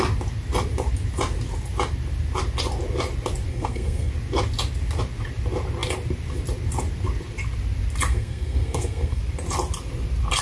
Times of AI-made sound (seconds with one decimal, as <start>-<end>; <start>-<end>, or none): 3.5-4.1; 8.1-9.2